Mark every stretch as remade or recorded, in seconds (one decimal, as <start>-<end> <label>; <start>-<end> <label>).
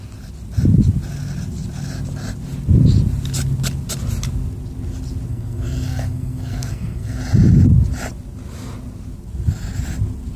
0.0-5.3 recorded; 5.3-7.2 remade; 7.2-10.4 recorded